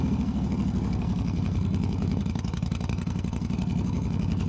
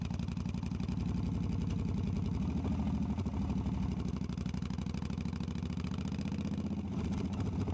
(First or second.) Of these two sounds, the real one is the second